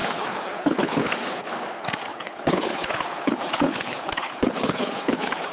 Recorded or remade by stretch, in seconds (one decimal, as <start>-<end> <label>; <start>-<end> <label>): 0.0-1.5 remade; 1.5-2.1 recorded; 2.1-5.5 remade